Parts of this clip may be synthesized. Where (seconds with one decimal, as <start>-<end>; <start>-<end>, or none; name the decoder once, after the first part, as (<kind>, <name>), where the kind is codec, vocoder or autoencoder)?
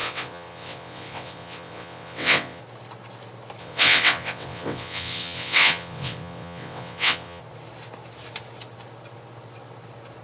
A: 0.0-2.6 (vocoder, WaveNeXt); 3.6-7.4